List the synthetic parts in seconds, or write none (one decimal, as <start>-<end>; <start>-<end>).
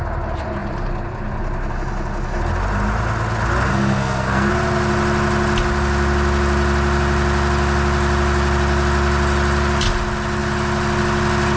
3.7-4.5